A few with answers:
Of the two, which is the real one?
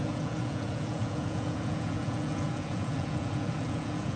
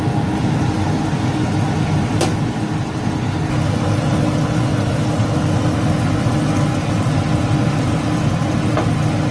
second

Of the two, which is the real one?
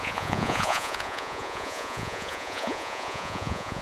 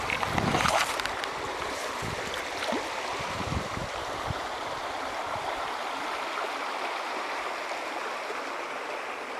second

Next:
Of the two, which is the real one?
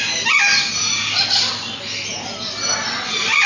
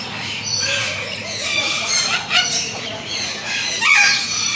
first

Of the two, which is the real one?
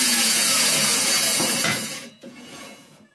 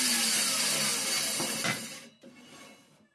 second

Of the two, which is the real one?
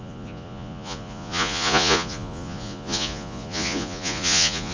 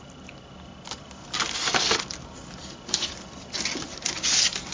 second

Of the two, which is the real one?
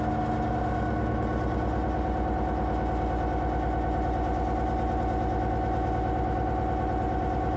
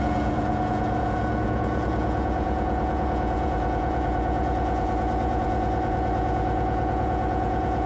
first